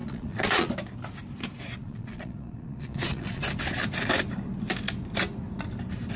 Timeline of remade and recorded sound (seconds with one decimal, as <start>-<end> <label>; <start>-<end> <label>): 0.0-0.7 remade; 0.7-1.8 recorded; 1.8-3.4 remade; 3.4-6.2 recorded